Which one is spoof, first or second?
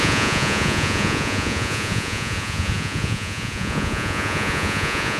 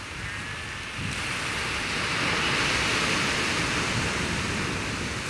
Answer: first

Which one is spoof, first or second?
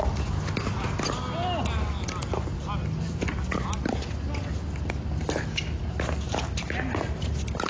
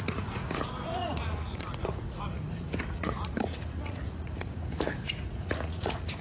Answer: second